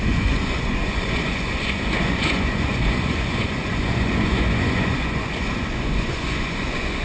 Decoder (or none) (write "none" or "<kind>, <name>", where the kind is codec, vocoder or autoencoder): vocoder, Vocos